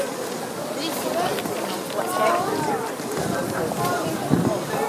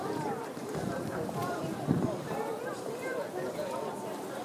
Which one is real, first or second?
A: first